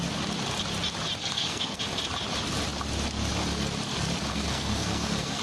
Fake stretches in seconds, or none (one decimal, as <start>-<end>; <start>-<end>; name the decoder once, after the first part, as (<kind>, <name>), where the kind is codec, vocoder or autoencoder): 1.2-1.8 (codec, SNAC); 4.3-5.4